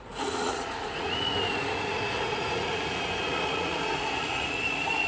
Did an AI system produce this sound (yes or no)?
yes